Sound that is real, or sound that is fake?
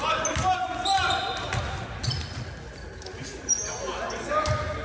real